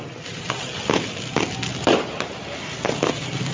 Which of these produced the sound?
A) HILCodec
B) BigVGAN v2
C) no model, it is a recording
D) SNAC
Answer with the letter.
C